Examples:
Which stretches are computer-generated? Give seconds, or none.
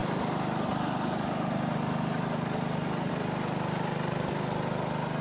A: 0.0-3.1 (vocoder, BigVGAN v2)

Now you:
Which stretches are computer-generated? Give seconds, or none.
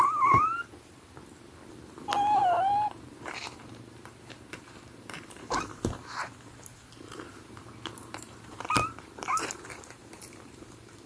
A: 0.0-0.5 (vocoder, BigVGAN v2); 2.4-11.1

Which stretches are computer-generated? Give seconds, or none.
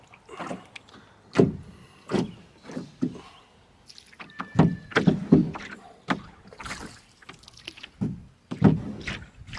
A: 5.4-6.2 (vocoder, BigVGAN v2)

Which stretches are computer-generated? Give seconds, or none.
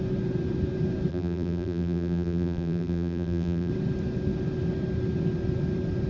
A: 1.1-3.7 (vocoder, BigVGAN v2)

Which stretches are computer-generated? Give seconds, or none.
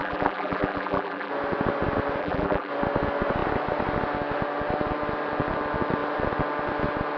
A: 0.0-1.3 (vocoder, BigVGAN v2); 2.2-2.7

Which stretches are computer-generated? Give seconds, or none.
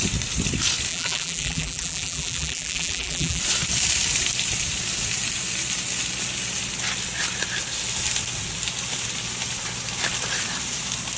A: 0.9-3.4 (vocoder, BigVGAN v2)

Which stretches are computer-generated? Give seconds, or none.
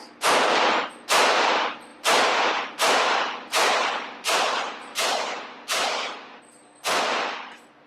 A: 1.9-6.4 (vocoder, BigVGAN v2)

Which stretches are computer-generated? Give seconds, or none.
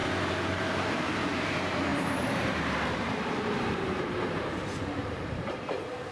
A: 1.9-5.6 (vocoder, BigVGAN v2)